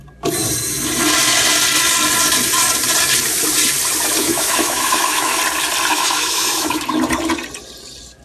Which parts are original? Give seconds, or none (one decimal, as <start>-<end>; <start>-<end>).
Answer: 0.0-4.2; 5.4-5.9; 6.8-8.2